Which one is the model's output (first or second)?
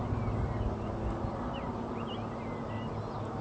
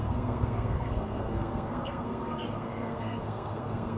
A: second